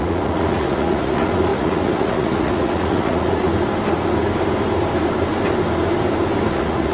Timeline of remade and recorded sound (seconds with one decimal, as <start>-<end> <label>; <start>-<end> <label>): 0.0-3.5 remade; 3.5-6.5 recorded; 6.5-6.9 remade